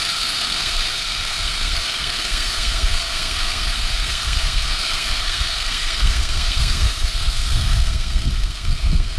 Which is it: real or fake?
fake